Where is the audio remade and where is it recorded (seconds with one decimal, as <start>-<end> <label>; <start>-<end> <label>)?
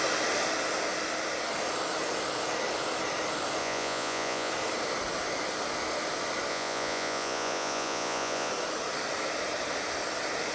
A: 0.0-3.6 recorded; 3.6-4.5 remade; 4.5-6.5 recorded; 6.5-8.5 remade; 8.5-10.5 recorded